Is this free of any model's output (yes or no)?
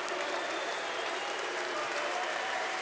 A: no